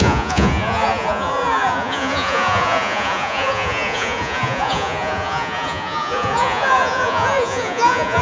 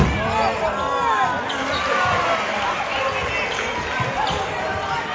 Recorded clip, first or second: second